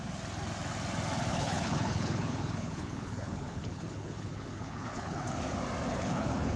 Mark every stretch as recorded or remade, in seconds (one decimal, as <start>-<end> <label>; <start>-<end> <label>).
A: 0.0-1.3 recorded; 1.3-5.3 remade; 5.3-5.9 recorded; 5.9-6.6 remade